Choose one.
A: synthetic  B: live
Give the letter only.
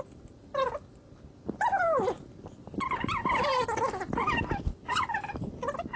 B